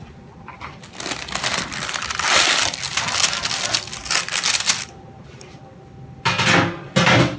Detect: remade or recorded recorded